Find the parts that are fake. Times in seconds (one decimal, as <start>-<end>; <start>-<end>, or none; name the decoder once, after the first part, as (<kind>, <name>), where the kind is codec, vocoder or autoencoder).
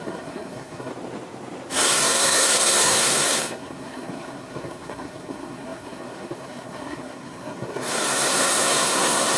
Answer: 0.0-0.9 (codec, SNAC); 1.7-9.4